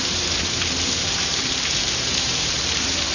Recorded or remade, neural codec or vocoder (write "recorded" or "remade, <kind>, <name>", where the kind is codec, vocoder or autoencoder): remade, vocoder, BigVGAN v2